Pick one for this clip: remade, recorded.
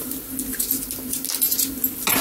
recorded